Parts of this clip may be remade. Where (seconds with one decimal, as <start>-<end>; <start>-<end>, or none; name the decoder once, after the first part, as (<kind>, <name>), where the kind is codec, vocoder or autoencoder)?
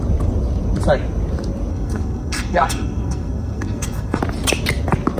1.7-4.2 (codec, SNAC)